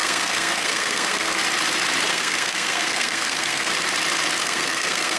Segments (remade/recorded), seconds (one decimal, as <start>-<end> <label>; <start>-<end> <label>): 0.0-1.4 remade; 1.4-2.1 recorded; 2.1-3.7 remade; 3.7-4.4 recorded; 4.4-5.2 remade